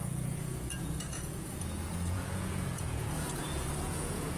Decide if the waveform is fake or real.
fake